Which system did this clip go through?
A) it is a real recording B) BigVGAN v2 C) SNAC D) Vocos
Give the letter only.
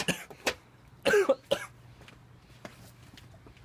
A